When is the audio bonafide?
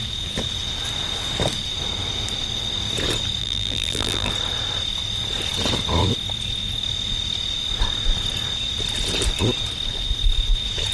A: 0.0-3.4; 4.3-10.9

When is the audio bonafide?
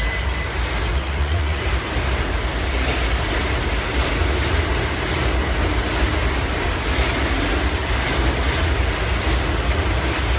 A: 0.0-0.9; 1.6-10.4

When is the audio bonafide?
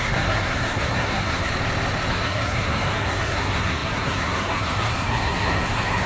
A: 1.5-2.1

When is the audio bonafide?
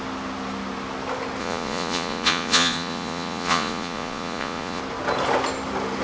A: 0.0-1.4; 4.8-6.0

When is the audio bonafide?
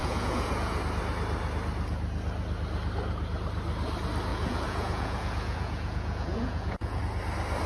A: 0.8-4.3; 7.0-7.7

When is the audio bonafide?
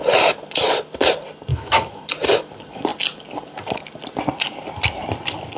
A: 0.0-1.5; 2.0-5.6